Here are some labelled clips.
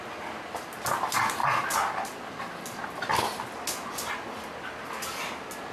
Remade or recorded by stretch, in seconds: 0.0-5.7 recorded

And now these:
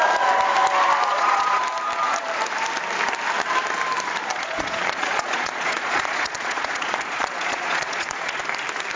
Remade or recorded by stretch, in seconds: 0.0-1.1 recorded; 1.1-1.6 remade; 1.6-4.3 recorded; 4.3-8.4 remade; 8.4-9.0 recorded

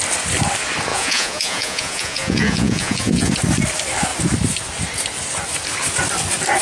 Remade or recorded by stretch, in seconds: 0.0-0.9 recorded; 0.9-3.3 remade; 3.3-6.6 recorded

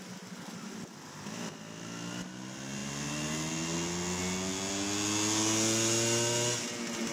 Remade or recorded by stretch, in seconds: 0.0-7.1 recorded

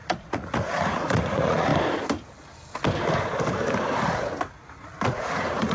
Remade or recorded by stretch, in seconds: 0.0-1.7 remade; 1.7-5.1 recorded; 5.1-5.7 remade